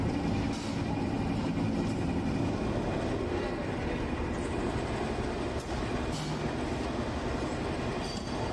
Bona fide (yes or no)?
yes